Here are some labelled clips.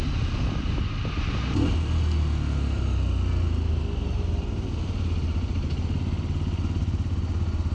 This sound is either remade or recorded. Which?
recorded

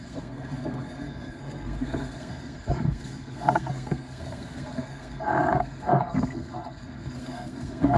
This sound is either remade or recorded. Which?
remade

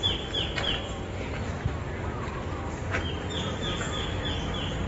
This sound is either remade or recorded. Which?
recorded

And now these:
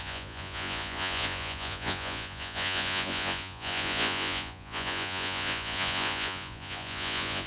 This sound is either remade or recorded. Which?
remade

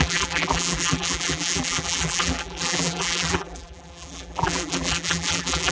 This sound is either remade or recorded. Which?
remade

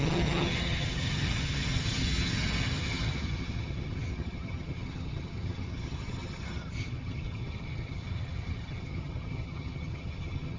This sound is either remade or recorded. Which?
remade